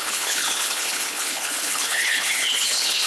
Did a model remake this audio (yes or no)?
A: yes